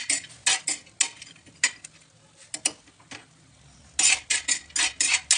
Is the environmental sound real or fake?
real